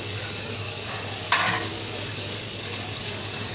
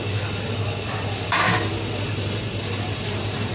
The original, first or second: second